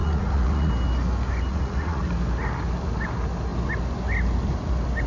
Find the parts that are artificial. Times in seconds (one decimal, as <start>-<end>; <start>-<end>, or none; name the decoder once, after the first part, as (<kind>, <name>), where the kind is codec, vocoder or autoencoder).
0.0-0.7 (vocoder, Vocos); 1.5-2.0